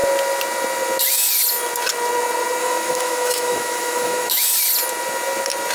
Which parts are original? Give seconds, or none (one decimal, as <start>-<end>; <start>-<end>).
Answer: 0.0-2.6; 4.4-5.7